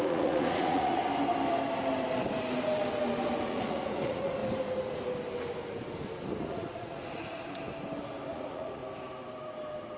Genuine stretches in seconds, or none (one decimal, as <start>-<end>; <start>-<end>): 1.0-3.4; 4.4-6.4; 7.6-8.3; 8.8-10.0